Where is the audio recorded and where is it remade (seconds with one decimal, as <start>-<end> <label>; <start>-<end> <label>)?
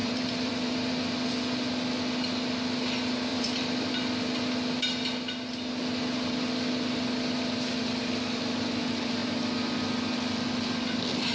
0.0-0.9 remade; 0.9-3.3 recorded; 3.3-3.9 remade; 3.9-11.3 recorded